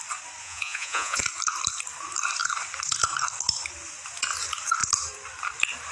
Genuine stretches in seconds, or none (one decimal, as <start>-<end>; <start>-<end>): 0.0-0.4; 1.2-5.9

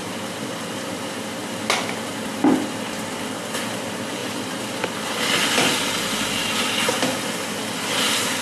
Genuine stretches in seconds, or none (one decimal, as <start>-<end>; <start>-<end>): 0.0-8.4

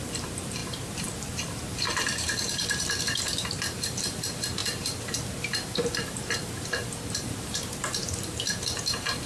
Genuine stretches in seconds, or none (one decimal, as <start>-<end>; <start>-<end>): none

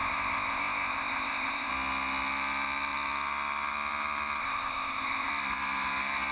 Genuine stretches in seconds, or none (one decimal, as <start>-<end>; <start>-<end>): 1.7-4.4; 5.3-6.3

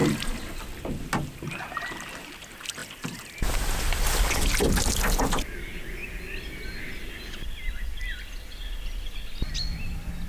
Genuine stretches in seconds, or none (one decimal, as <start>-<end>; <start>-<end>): 1.0-2.8; 3.4-10.3

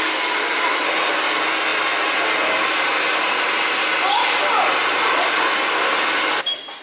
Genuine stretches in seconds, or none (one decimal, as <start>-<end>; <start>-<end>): 0.0-6.8

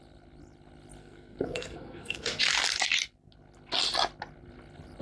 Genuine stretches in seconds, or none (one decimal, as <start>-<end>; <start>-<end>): 0.0-1.0; 2.4-5.0

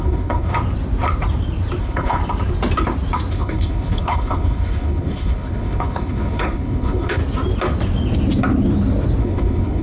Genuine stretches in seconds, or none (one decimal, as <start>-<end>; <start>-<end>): 0.5-1.8; 2.2-3.3; 7.2-9.2